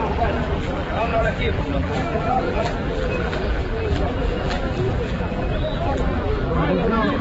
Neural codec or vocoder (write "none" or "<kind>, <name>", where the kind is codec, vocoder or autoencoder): vocoder, BigVGAN v2